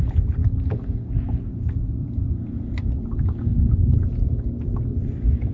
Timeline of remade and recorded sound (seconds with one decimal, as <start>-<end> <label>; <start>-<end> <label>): 0.0-5.5 recorded